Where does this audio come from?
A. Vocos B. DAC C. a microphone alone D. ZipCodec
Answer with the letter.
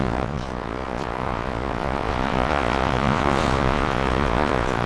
A